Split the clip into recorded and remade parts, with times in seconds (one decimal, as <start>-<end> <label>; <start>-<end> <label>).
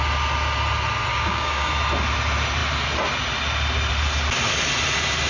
0.0-1.1 recorded; 1.1-1.7 remade; 1.7-5.3 recorded